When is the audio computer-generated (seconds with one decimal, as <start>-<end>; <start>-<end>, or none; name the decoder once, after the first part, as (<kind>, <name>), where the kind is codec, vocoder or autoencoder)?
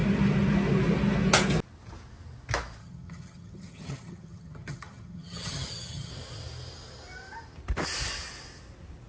2.8-6.1 (vocoder, HiFi-GAN)